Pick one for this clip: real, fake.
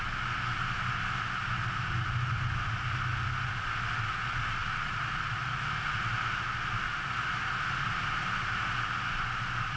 real